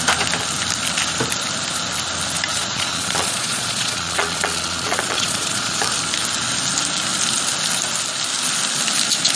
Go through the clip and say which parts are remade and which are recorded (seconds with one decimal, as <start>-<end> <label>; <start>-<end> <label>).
0.0-2.5 recorded; 2.5-5.8 remade; 5.8-9.4 recorded